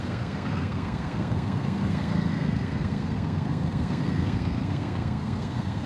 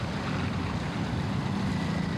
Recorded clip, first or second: second